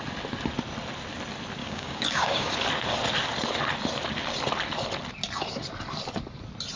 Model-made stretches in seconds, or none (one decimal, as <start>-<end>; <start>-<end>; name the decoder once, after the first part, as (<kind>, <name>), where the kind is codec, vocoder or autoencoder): 1.6-2.5 (codec, DAC)